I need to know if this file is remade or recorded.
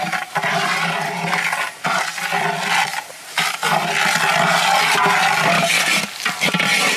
recorded